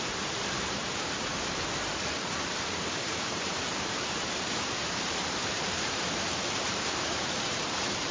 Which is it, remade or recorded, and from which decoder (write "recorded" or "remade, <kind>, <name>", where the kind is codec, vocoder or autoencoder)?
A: remade, vocoder, BigVGAN v2